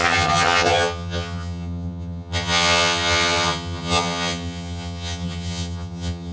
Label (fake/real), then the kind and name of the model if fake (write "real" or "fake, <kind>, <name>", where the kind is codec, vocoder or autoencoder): fake, vocoder, HiFi-GAN